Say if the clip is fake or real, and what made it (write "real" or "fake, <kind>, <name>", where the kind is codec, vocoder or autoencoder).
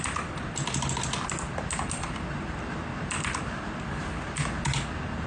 real